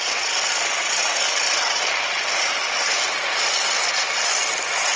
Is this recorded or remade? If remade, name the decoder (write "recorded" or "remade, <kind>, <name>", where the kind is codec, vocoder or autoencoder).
recorded